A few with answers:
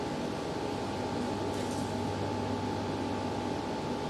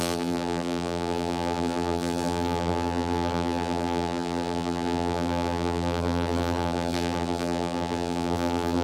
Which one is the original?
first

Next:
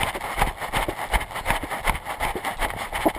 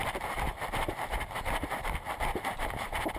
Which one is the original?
first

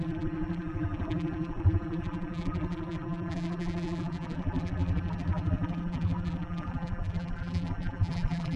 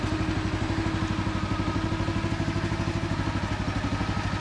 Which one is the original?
second